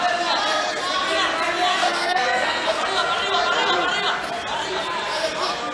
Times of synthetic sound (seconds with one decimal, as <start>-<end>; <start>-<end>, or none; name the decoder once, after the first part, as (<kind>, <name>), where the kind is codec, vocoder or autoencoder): 1.7-2.8 (codec, SNAC)